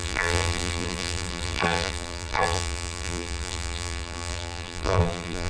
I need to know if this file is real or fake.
fake